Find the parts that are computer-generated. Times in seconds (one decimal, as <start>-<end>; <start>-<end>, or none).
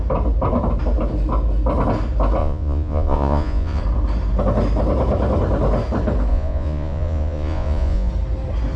2.4-3.8; 6.3-8.1